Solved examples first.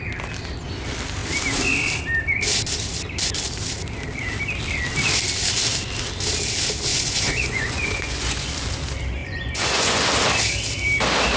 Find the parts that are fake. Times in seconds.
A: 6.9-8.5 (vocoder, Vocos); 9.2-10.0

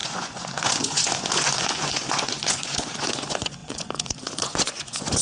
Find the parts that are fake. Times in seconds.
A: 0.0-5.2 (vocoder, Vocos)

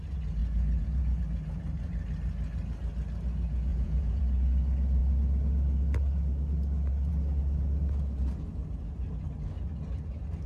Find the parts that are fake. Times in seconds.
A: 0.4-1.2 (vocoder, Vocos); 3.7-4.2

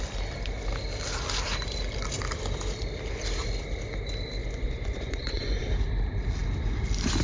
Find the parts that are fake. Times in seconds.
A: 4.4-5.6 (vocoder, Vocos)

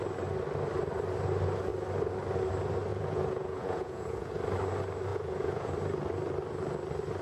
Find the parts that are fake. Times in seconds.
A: 2.9-4.3 (vocoder, Vocos); 5.1-5.7

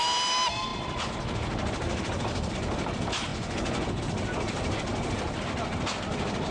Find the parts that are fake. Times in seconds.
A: 3.3-4.0 (vocoder, Vocos)